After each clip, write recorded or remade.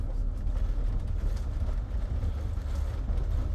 recorded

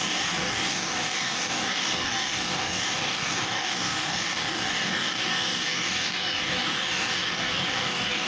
remade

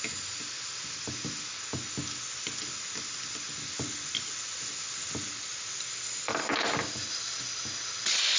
recorded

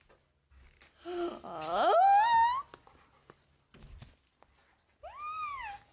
recorded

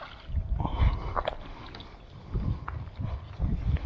recorded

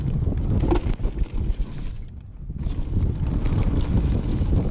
recorded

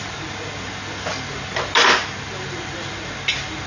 recorded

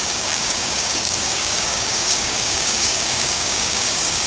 remade